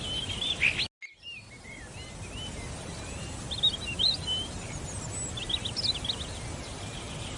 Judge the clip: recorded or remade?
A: recorded